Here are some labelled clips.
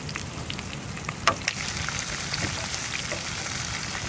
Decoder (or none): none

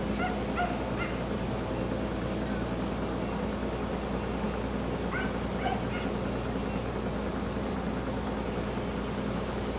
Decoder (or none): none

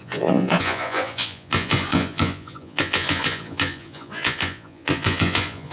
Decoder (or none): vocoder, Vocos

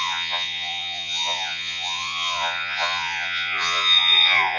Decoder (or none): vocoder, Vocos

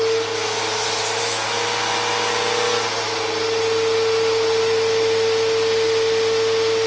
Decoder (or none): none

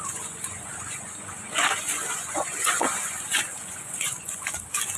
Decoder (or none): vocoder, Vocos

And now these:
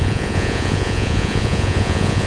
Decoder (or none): vocoder, Vocos